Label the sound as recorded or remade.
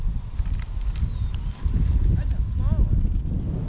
recorded